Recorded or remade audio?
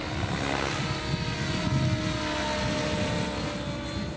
recorded